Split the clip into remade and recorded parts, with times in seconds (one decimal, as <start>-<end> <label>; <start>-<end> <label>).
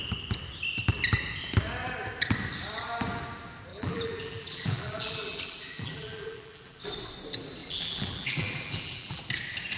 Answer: 0.0-3.7 recorded; 3.7-6.8 remade; 6.8-7.6 recorded; 7.6-9.2 remade; 9.2-9.8 recorded